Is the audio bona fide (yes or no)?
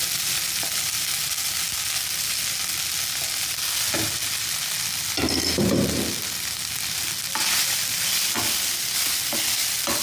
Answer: yes